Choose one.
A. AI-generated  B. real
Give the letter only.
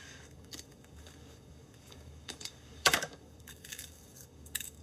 A